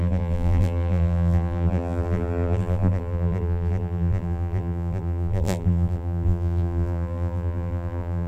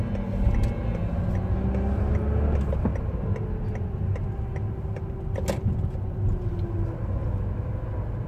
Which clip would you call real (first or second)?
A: second